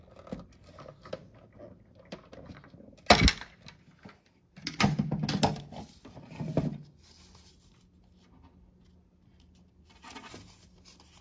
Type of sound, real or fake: real